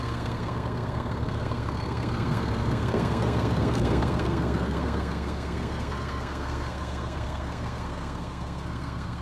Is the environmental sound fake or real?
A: fake